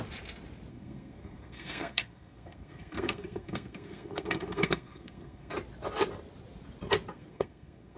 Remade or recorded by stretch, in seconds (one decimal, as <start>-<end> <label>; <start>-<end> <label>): 0.0-0.7 recorded; 0.7-5.5 remade; 5.5-7.1 recorded; 7.1-8.0 remade